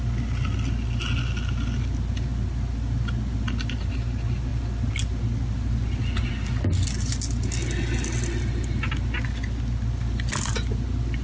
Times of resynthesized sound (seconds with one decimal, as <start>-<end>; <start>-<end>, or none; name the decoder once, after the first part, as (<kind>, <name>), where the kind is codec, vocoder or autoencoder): none